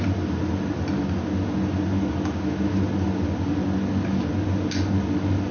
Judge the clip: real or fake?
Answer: real